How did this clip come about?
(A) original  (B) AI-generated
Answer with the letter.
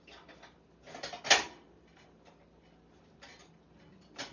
A